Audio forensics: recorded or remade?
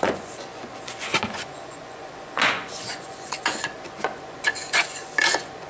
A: remade